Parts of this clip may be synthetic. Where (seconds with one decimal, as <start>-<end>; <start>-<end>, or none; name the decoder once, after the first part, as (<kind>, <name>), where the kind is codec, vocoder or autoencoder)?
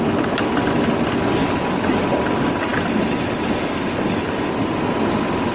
none